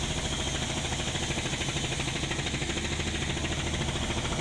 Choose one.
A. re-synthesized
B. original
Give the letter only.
B